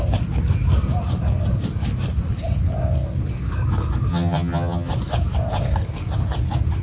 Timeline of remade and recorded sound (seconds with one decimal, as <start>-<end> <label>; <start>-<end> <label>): 0.0-4.1 recorded; 4.1-4.9 remade; 4.9-6.8 recorded